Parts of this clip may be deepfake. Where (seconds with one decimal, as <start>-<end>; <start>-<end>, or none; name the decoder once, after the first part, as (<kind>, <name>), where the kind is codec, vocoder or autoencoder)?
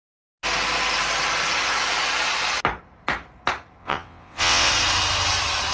3.8-4.7 (vocoder, WaveNeXt)